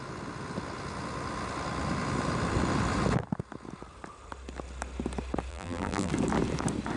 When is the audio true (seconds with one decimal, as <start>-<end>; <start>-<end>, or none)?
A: 0.0-5.5; 6.1-7.0